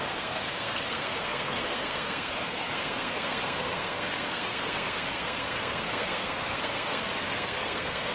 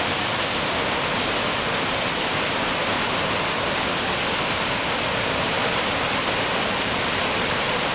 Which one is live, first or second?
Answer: second